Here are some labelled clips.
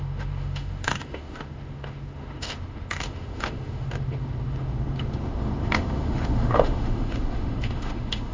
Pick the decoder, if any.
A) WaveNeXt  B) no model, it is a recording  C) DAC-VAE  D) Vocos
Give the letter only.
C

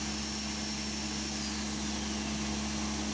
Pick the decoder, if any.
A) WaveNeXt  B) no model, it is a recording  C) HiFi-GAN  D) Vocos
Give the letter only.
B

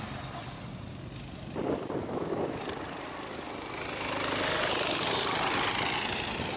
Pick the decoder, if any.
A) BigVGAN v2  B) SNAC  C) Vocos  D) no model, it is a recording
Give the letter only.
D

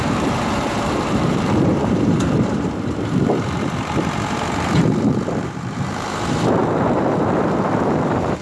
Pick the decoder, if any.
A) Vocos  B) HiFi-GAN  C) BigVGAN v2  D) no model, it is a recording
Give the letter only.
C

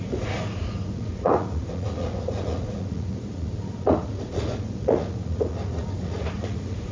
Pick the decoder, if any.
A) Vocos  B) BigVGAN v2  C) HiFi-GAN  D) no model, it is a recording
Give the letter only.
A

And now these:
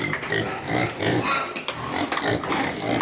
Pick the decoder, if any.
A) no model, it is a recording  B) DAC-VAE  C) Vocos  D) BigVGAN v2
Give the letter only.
A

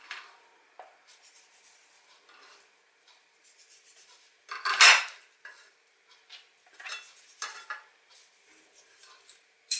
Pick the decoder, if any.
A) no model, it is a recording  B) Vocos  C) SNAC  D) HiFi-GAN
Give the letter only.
A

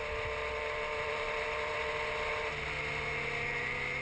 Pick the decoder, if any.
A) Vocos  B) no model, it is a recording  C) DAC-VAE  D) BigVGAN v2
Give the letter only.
B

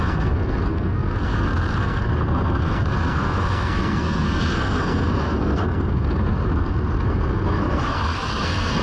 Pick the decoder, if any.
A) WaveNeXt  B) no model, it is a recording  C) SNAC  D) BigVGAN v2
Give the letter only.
C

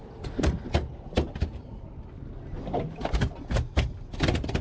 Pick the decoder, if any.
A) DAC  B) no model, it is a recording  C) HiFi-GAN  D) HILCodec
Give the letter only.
B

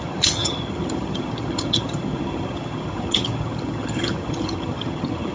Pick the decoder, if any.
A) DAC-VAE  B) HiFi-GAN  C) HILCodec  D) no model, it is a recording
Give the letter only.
B